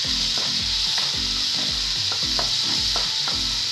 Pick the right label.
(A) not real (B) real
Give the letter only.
B